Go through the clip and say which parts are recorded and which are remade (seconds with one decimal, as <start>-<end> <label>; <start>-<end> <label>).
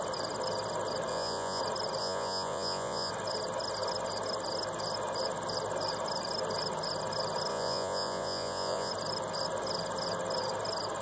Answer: 0.0-1.1 recorded; 1.1-1.6 remade; 1.6-2.0 recorded; 2.0-3.1 remade; 3.1-7.5 recorded; 7.5-8.9 remade; 8.9-11.0 recorded